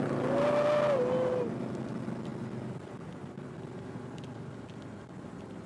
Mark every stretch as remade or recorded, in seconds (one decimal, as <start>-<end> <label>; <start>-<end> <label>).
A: 0.0-5.7 recorded